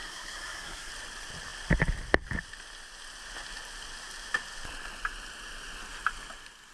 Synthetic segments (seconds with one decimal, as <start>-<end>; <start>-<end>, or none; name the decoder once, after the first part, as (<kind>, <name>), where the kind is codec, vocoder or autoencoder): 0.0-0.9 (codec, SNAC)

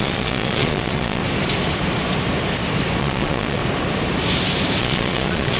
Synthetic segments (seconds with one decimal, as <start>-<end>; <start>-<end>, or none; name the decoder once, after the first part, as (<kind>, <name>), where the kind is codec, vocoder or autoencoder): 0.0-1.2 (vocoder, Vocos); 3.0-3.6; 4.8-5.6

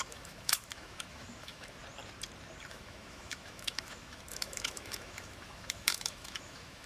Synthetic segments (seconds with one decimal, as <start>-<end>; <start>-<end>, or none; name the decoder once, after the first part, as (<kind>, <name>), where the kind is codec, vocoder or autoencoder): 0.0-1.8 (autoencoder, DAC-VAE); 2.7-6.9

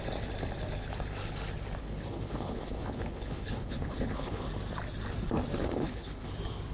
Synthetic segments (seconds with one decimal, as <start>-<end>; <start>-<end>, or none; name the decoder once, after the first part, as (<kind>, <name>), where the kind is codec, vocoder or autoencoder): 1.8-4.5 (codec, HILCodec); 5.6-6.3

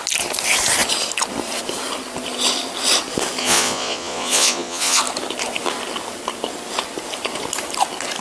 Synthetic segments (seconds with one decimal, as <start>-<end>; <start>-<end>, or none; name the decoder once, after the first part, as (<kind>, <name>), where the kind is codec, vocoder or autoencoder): 3.4-5.0 (vocoder, Vocos)

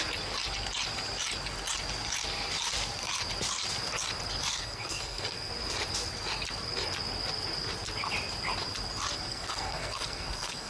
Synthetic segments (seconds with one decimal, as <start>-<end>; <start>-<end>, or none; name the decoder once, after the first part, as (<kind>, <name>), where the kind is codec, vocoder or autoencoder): 4.5-5.5 (codec, SNAC); 9.3-10.7